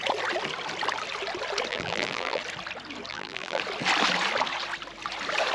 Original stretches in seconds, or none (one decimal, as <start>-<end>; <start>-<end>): 0.0-1.7; 2.4-3.1; 3.6-5.5